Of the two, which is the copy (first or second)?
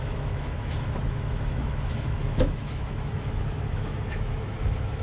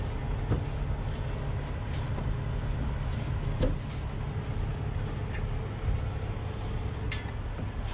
first